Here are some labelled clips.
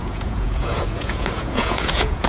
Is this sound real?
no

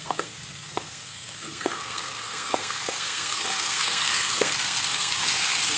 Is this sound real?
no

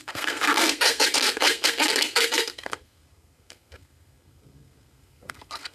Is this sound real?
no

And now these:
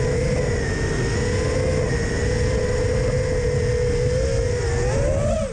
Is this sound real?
yes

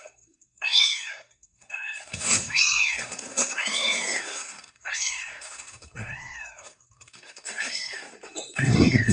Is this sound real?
no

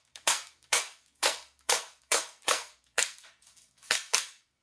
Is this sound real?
no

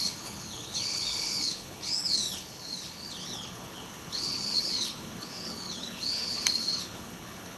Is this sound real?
no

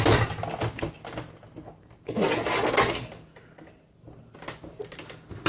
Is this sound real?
yes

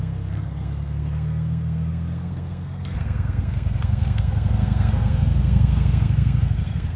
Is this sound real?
no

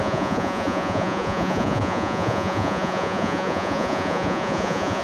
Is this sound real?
no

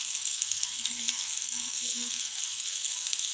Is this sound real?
no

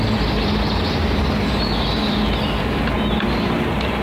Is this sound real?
yes